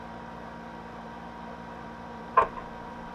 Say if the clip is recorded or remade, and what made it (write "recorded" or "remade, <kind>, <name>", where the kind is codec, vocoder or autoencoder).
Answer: remade, vocoder, BigVGAN v2